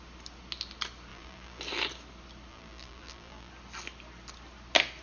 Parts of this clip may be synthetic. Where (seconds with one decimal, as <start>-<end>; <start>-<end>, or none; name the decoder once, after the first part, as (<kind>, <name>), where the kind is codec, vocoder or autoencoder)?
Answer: 1.1-1.6 (vocoder, BigVGAN v2); 2.5-3.5